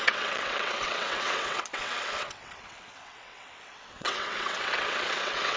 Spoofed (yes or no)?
yes